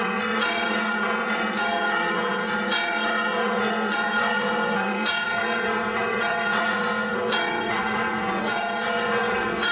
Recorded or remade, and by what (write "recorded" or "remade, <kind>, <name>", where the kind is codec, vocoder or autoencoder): remade, vocoder, WaveNeXt